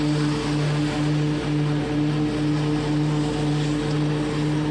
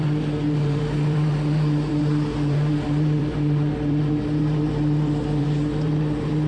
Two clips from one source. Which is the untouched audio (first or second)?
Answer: first